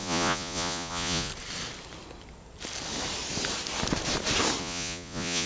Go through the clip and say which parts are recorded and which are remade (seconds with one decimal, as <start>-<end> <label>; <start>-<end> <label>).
0.0-1.3 remade; 1.3-4.6 recorded; 4.6-5.5 remade